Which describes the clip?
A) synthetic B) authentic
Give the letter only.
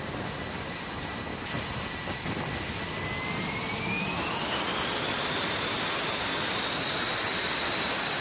B